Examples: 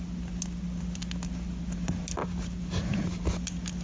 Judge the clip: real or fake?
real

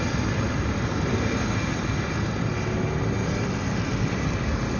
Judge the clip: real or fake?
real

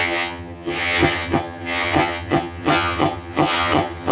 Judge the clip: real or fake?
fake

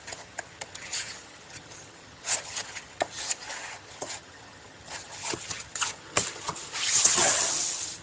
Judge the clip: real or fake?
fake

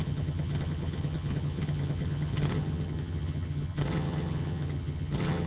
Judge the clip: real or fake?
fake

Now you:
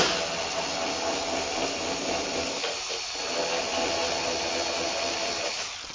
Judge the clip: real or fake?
real